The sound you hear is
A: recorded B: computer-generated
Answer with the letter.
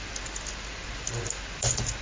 A